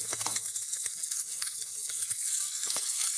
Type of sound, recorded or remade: remade